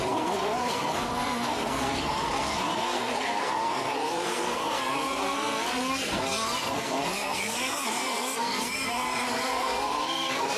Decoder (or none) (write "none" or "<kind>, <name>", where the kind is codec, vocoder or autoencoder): codec, SNAC